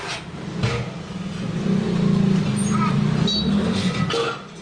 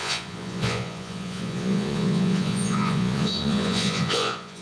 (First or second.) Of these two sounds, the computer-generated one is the second